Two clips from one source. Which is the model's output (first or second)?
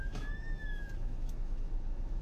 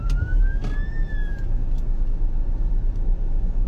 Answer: first